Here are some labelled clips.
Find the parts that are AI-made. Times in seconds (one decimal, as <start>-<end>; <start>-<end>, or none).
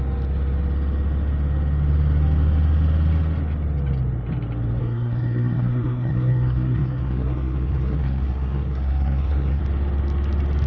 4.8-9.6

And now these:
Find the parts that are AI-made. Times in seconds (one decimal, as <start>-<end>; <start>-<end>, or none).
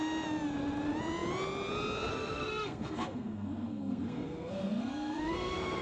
2.1-5.8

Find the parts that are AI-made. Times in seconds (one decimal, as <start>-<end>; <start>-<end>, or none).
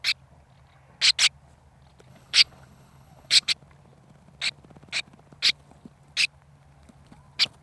2.1-3.5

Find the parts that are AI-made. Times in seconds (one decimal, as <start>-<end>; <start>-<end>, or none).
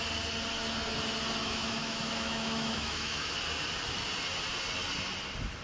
1.4-3.3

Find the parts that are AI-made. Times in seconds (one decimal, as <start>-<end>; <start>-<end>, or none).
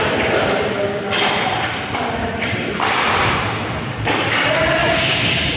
4.8-5.6